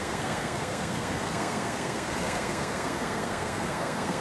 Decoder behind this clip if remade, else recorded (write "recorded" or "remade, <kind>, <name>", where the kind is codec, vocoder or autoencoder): remade, codec, SNAC